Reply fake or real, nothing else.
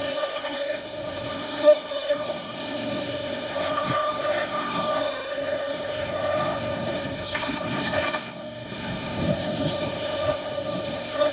fake